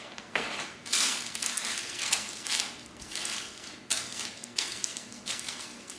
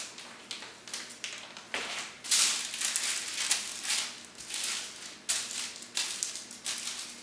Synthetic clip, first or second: first